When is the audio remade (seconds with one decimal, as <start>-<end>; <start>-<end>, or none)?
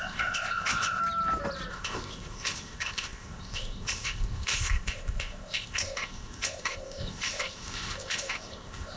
0.0-1.0; 1.7-9.0